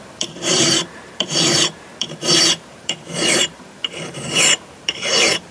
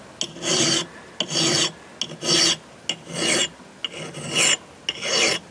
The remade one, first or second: first